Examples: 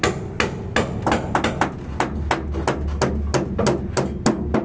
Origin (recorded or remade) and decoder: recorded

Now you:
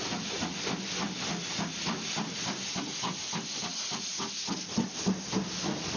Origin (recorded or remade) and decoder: recorded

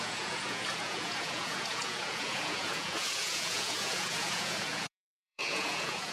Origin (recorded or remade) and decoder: remade, vocoder, Vocos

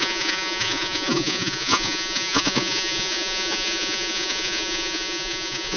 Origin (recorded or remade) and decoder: remade, vocoder, Vocos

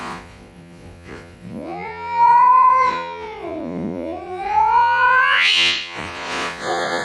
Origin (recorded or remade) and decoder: remade, vocoder, Vocos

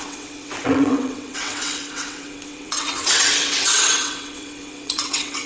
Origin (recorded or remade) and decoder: remade, vocoder, WaveNeXt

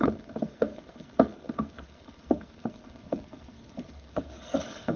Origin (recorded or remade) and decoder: remade, codec, SNAC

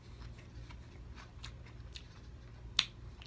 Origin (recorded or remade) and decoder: recorded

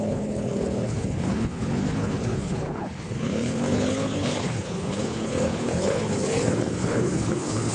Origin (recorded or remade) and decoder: remade, codec, HILCodec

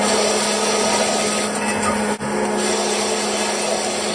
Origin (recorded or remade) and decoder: recorded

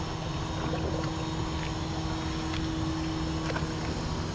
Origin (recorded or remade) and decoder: recorded